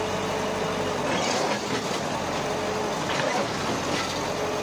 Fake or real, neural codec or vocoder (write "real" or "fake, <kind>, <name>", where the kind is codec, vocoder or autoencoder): real